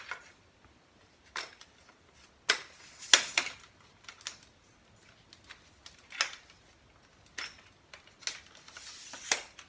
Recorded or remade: recorded